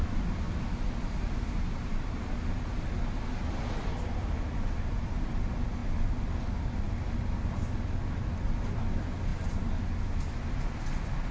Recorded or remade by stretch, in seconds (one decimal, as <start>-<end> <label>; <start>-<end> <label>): 0.0-11.3 recorded